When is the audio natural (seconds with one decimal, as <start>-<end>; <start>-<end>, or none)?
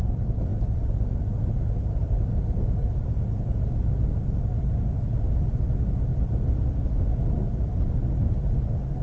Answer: 0.0-9.0